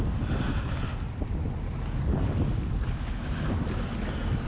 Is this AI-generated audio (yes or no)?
no